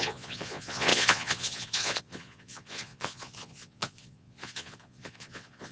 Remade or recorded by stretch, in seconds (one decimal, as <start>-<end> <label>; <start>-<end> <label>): 0.0-5.7 remade